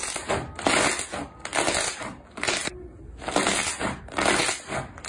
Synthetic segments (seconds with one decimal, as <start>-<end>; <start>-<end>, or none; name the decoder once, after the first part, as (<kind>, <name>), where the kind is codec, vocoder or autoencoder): none